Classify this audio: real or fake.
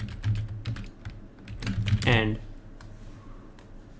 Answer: real